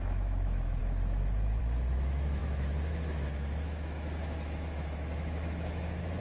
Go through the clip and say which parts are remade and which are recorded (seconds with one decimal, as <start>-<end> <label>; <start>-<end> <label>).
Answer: 0.0-6.2 remade